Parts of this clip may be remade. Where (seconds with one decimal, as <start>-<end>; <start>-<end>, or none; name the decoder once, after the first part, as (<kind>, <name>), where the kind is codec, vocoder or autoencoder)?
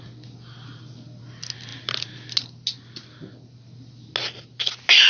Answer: none